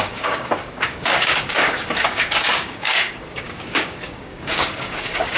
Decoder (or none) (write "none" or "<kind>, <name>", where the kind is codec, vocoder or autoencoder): codec, DAC